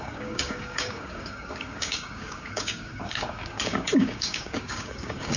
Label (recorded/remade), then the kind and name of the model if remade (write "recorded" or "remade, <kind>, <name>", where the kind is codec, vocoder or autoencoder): remade, codec, DAC